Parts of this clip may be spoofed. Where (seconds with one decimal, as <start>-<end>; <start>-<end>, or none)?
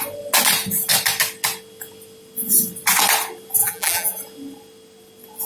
3.6-4.2